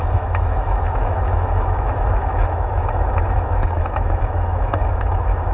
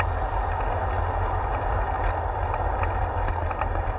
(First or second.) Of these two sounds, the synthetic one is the first